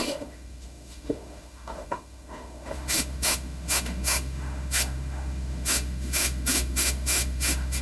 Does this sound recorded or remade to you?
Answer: remade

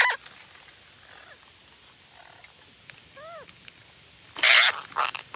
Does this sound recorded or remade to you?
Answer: recorded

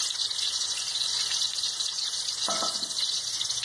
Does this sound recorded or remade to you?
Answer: remade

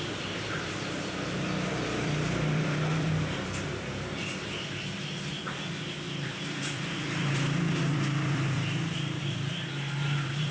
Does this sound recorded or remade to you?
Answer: remade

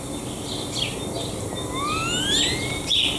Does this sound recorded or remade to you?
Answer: recorded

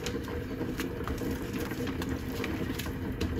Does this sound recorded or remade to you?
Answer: recorded